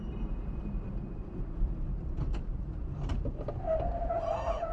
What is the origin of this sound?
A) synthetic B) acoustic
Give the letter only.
A